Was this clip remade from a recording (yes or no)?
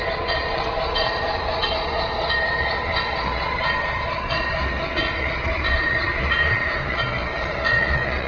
yes